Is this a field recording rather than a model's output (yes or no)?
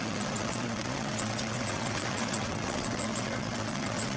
no